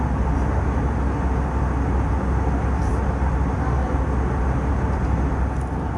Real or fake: real